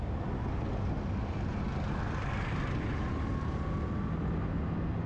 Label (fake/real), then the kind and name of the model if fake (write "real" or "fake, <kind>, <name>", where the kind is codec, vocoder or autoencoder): real